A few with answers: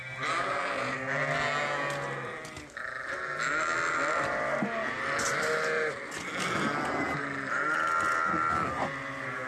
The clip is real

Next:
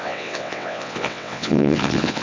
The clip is fake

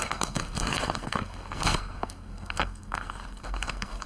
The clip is fake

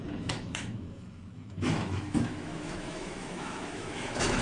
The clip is fake